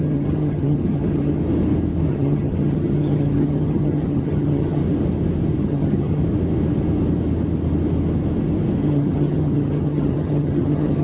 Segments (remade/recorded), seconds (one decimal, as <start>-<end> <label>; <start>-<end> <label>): 0.0-1.4 remade; 1.4-2.1 recorded; 2.1-4.8 remade; 4.8-5.6 recorded; 5.6-6.2 remade; 6.2-8.8 recorded; 8.8-11.0 remade